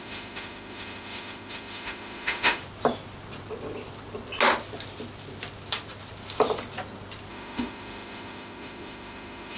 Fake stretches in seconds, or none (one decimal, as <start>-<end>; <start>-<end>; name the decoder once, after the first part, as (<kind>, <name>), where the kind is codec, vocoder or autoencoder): 0.0-2.6 (autoencoder, DAC-VAE); 7.3-9.6